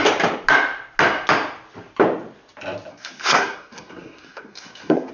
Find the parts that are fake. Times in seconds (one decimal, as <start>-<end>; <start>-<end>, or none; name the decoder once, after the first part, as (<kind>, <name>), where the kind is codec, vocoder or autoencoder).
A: 2.9-5.1 (codec, SNAC)